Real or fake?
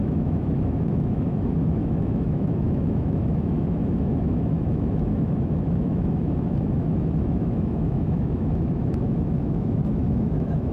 fake